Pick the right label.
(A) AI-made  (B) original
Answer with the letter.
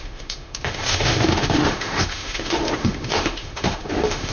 A